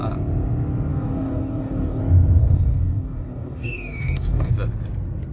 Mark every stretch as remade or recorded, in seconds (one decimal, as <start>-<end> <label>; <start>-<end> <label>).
0.0-0.9 recorded; 0.9-2.0 remade; 2.0-2.4 recorded; 2.4-4.5 remade; 4.5-5.3 recorded